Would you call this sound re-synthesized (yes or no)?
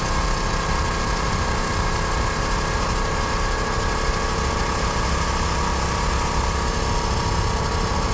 no